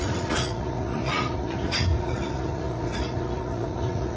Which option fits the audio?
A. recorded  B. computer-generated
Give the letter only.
B